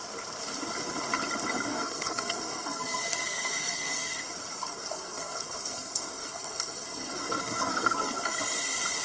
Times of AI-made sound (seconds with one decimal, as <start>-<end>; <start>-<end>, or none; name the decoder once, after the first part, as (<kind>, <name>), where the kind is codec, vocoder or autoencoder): 1.7-4.2 (codec, SNAC); 4.7-8.4